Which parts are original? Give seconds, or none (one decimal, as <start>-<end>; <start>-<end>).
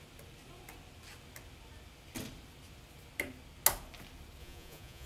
0.0-4.4